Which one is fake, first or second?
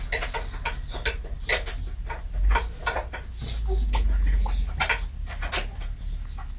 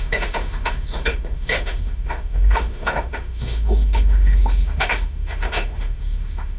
second